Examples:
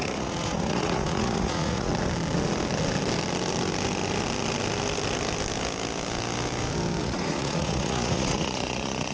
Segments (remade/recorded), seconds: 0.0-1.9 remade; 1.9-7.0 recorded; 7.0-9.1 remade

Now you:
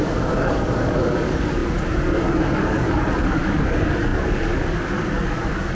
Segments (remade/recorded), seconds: 0.0-5.7 remade

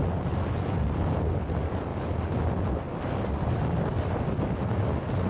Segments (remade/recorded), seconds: 0.0-5.3 recorded

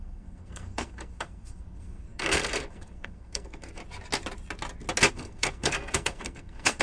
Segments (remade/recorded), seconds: 0.0-3.8 remade; 3.8-5.1 recorded; 5.1-6.8 remade